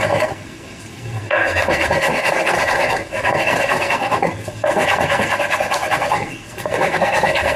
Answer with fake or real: fake